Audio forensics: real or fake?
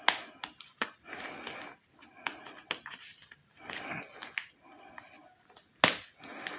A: real